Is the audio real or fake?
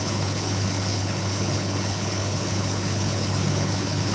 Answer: fake